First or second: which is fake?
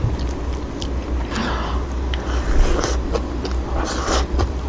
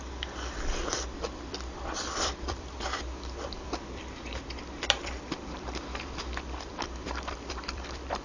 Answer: second